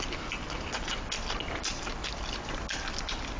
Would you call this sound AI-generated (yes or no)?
no